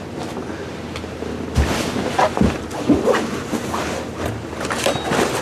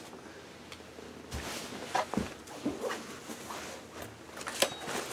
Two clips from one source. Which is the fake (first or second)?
first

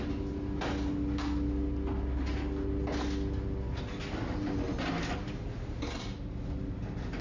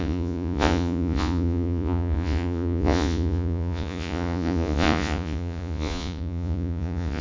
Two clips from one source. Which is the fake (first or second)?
second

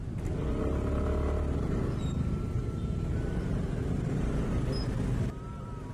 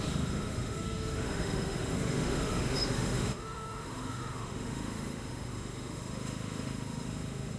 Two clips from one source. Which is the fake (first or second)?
second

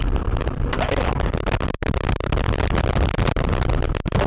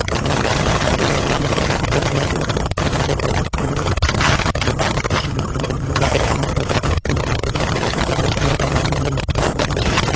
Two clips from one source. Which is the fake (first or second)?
second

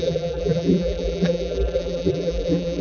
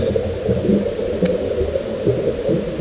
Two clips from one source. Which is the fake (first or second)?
first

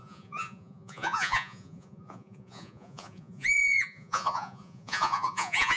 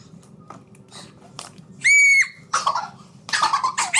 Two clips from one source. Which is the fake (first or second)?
first